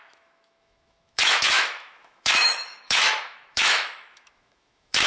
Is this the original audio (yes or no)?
no